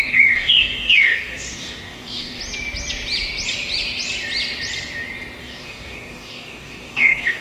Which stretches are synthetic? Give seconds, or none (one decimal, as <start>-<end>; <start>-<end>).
0.0-2.4; 5.4-7.4